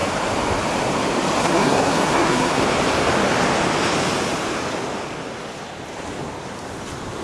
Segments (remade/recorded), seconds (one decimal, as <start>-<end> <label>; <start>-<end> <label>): 0.0-1.4 recorded; 1.4-2.6 remade; 2.6-7.2 recorded